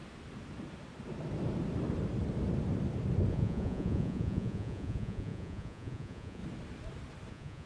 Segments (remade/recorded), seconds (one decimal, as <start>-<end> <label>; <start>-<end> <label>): 0.0-3.3 recorded; 3.3-6.4 remade; 6.4-7.3 recorded; 7.3-7.7 remade

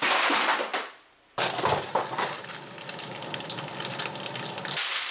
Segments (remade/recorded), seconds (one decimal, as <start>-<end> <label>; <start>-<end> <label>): 0.0-5.1 recorded